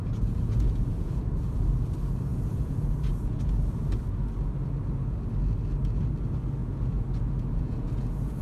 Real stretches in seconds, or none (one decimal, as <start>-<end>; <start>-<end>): 1.3-2.3; 3.4-6.6